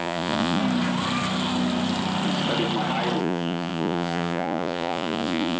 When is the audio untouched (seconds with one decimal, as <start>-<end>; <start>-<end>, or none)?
0.6-3.2